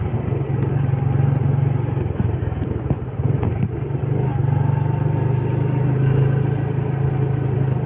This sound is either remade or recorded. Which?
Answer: recorded